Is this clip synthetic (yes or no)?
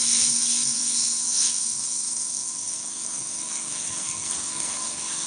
yes